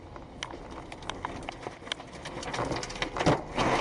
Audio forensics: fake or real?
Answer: real